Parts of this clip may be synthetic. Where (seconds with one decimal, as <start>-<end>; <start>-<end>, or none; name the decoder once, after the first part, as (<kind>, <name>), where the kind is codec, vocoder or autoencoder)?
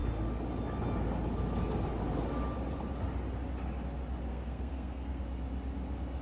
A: 4.3-5.2 (codec, SNAC)